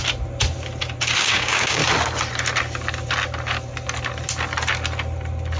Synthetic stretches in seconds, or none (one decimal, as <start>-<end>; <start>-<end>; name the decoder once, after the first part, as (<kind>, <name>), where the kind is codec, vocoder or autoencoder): 1.2-1.8 (codec, DAC)